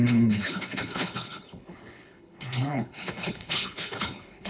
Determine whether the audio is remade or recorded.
remade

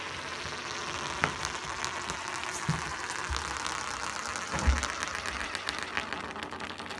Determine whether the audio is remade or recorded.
recorded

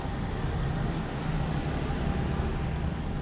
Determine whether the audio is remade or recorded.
recorded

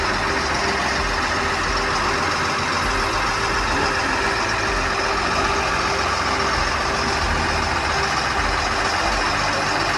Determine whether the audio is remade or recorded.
recorded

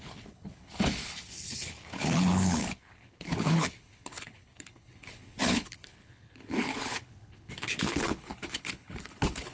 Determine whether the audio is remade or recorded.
remade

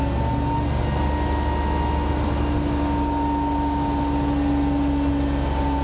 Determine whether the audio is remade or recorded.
recorded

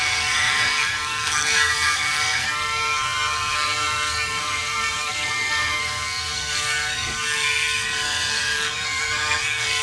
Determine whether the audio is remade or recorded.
remade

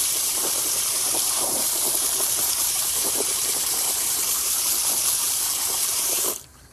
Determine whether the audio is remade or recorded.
remade